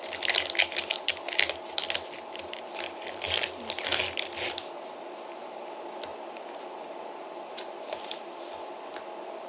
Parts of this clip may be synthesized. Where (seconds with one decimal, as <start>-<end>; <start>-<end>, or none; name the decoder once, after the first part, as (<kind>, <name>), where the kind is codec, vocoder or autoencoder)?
none